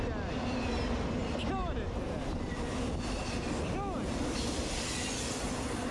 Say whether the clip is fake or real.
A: real